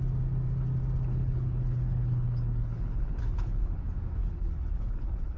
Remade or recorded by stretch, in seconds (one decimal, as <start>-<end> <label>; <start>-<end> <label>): 0.0-1.1 recorded; 1.1-3.8 remade; 3.8-4.2 recorded; 4.2-5.4 remade